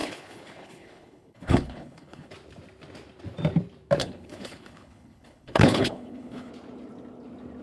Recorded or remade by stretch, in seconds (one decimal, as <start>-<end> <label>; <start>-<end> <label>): 0.0-2.3 remade; 2.3-4.0 recorded; 4.0-6.5 remade; 6.5-7.6 recorded